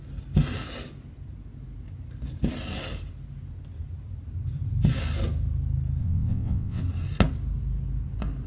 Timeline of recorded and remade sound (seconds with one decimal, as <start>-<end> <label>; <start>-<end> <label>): 0.0-6.0 recorded; 6.0-6.8 remade; 6.8-8.5 recorded